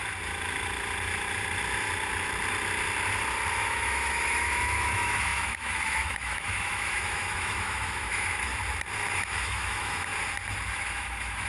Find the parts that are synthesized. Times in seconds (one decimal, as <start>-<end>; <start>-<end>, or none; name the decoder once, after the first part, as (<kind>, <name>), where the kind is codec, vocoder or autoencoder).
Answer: 3.5-8.5 (autoencoder, DAC-VAE); 9.1-10.1; 10.7-11.5